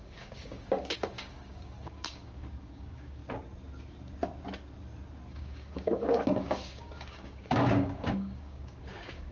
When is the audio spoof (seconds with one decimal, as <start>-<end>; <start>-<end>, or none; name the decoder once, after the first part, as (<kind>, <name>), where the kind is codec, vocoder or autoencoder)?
0.0-3.2 (codec, DAC); 5.3-9.3